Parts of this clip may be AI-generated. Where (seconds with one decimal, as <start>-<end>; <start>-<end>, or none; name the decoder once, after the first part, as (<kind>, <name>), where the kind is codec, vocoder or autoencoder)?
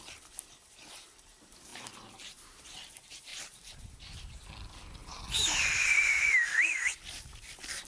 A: 1.7-2.6 (vocoder, BigVGAN v2); 3.3-4.2; 5.0-6.2